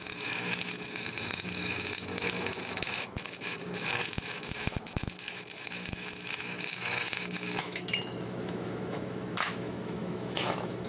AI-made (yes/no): yes